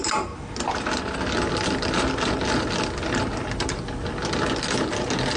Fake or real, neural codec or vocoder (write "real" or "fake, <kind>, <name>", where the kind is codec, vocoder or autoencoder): real